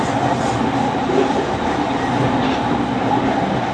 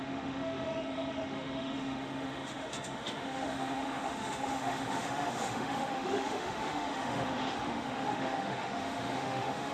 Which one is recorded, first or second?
first